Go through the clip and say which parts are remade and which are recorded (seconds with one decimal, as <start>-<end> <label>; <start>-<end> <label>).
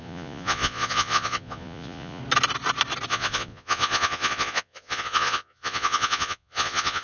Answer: 0.0-2.2 remade; 2.2-3.1 recorded; 3.1-7.0 remade